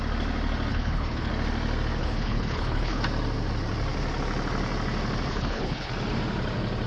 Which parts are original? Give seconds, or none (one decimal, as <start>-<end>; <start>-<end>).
0.0-0.7; 1.3-2.0; 3.0-5.3; 5.9-6.9